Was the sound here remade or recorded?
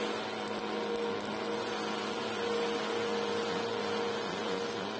recorded